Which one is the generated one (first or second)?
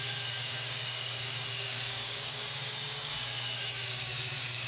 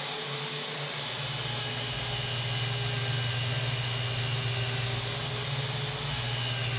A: first